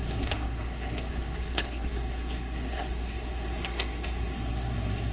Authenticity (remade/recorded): remade